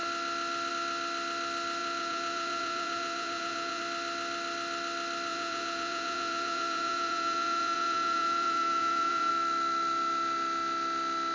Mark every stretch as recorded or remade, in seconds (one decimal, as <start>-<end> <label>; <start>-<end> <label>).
0.0-1.8 recorded; 1.8-3.8 remade; 3.8-5.3 recorded; 5.3-9.3 remade; 9.3-11.3 recorded